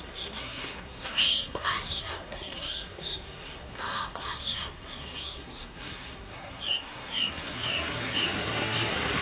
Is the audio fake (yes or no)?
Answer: yes